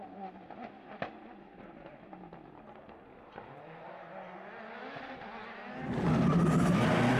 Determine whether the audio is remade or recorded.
recorded